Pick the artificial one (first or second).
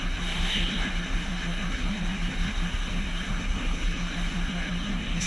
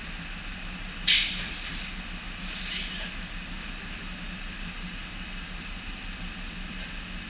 first